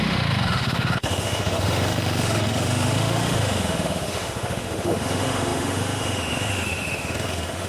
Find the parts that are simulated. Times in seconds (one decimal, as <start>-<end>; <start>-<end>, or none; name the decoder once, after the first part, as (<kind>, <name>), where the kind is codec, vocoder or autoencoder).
0.0-7.7 (autoencoder, DAC-VAE)